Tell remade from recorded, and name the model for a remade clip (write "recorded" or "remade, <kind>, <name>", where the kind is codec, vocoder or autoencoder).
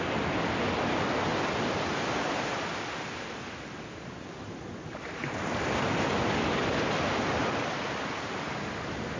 recorded